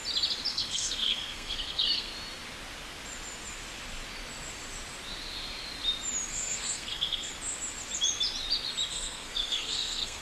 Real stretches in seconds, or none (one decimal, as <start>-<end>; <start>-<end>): 0.0-0.5; 2.1-6.3; 7.3-8.9